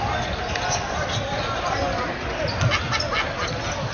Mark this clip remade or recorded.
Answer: recorded